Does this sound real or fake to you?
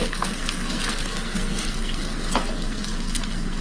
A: fake